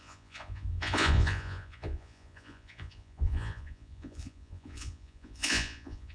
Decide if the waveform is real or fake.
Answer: fake